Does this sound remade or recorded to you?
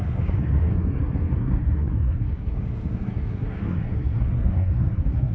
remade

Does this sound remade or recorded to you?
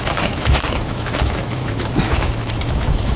remade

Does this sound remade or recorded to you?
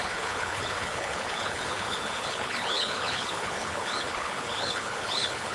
remade